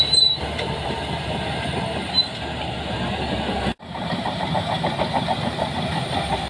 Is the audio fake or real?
fake